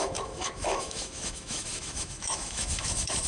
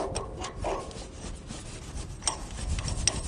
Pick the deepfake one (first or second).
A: first